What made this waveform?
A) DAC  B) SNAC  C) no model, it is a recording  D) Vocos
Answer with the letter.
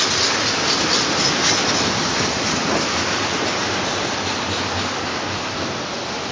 C